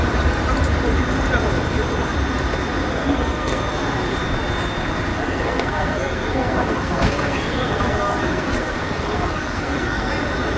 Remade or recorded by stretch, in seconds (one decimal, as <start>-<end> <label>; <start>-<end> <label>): 0.0-2.9 recorded; 2.9-3.6 remade; 3.6-5.1 recorded; 5.1-10.1 remade; 10.1-10.6 recorded